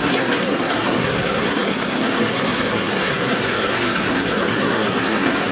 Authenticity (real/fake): fake